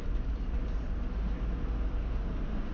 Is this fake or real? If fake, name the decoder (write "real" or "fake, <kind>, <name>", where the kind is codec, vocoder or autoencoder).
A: real